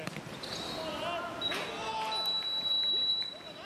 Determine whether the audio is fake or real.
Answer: real